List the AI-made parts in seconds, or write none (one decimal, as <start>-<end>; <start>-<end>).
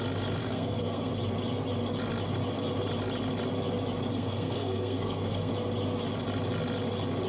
0.4-1.1; 4.1-5.5